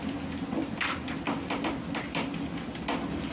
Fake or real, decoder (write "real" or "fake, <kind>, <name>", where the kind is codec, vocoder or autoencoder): real